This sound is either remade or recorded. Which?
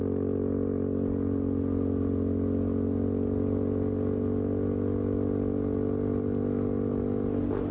recorded